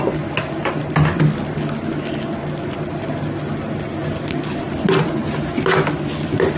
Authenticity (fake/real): real